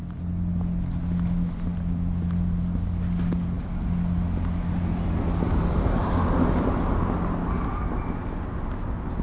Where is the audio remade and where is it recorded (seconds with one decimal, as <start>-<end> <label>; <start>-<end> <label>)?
0.0-9.2 recorded